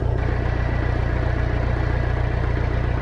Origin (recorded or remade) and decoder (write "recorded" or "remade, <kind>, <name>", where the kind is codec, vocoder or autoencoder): recorded